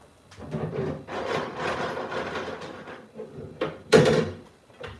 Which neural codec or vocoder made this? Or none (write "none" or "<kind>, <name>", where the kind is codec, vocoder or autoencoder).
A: none